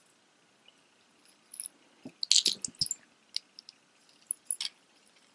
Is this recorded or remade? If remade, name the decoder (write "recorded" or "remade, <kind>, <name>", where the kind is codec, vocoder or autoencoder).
recorded